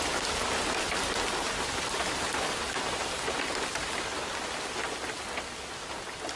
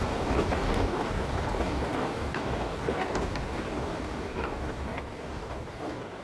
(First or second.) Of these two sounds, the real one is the first